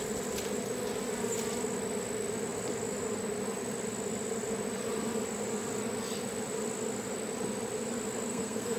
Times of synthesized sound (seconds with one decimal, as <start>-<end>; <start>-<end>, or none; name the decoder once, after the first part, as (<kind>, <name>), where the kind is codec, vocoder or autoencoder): 8.3-8.8 (codec, SNAC)

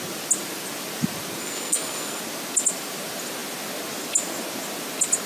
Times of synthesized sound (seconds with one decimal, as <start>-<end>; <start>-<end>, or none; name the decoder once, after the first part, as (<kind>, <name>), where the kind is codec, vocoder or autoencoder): 1.4-2.2 (codec, SNAC)

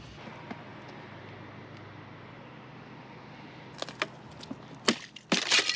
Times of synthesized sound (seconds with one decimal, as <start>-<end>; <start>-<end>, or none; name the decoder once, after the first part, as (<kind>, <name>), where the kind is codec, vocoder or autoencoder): none

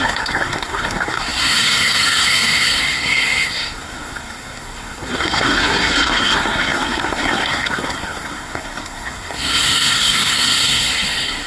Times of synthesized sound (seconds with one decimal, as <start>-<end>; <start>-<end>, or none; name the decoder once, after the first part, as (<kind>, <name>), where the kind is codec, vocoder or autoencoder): 0.0-11.5 (codec, SNAC)